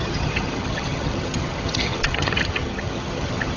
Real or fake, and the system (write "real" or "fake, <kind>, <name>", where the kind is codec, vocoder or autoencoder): fake, vocoder, HiFi-GAN